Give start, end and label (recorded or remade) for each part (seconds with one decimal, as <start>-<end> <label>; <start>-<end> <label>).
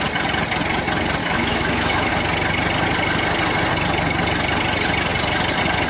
0.0-1.2 recorded; 1.2-2.1 remade; 2.1-5.9 recorded